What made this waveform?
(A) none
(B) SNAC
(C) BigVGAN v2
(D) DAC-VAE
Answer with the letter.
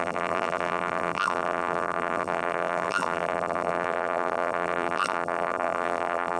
C